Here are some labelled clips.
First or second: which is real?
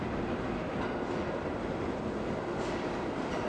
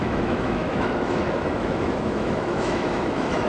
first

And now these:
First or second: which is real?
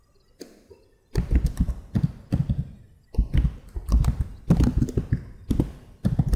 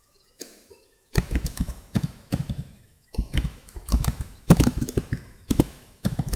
first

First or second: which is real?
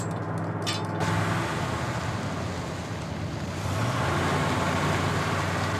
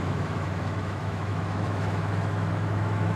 first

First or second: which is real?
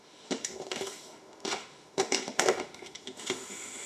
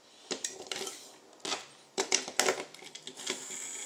second